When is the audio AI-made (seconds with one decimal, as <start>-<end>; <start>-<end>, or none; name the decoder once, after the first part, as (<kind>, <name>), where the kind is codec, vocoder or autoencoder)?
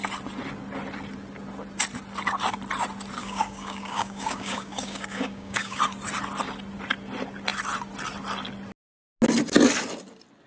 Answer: 3.2-5.8 (codec, DAC)